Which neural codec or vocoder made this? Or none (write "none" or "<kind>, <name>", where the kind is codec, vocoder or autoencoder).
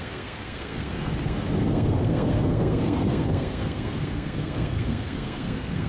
codec, SNAC